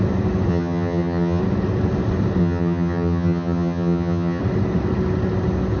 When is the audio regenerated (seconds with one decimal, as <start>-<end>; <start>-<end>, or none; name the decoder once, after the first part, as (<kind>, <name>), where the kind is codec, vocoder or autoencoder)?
0.5-1.4 (vocoder, HiFi-GAN); 2.4-4.4